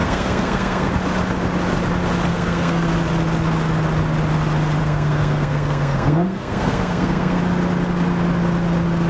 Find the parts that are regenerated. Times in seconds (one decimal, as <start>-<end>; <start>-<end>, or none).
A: 0.0-0.9; 2.3-2.9; 4.8-7.4